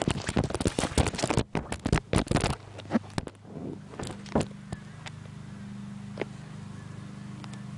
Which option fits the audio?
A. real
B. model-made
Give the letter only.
A